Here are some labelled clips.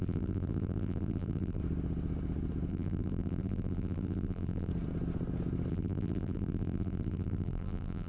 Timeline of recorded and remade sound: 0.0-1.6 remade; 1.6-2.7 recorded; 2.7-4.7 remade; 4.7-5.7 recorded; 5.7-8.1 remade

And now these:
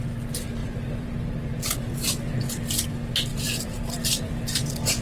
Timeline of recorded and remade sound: 0.0-0.6 recorded; 0.6-1.9 remade; 1.9-3.3 recorded; 3.3-5.0 remade

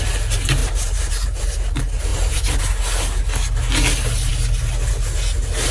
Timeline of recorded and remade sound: 0.0-0.6 recorded; 0.6-1.4 remade; 1.4-2.1 recorded; 2.1-2.6 remade; 2.6-5.7 recorded

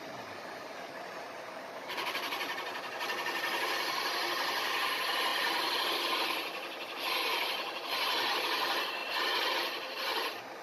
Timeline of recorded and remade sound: 0.0-9.0 remade; 9.0-9.5 recorded; 9.5-10.6 remade